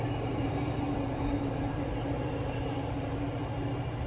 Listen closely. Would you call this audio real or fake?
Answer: fake